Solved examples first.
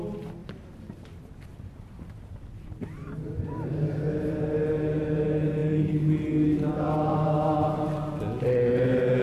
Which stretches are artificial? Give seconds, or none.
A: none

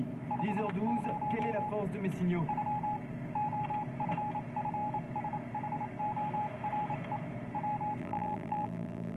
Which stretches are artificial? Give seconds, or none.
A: 8.0-9.2

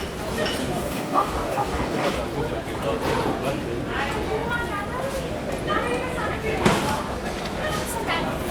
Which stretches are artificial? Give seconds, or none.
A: 0.6-2.1

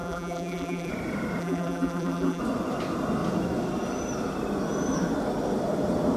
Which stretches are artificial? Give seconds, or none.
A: 0.0-0.9; 1.4-2.4

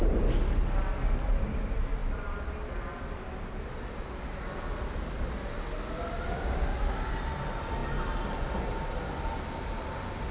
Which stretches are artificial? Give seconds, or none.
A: none

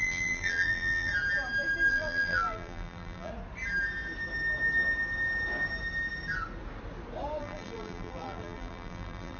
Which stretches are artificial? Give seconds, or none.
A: 0.0-1.1; 1.9-3.3; 7.4-9.4

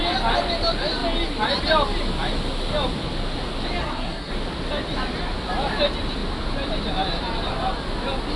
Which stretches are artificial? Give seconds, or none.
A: 3.8-4.3